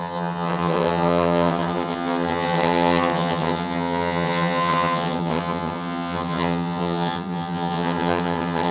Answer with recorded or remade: remade